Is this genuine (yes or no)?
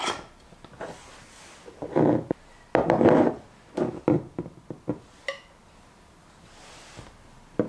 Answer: yes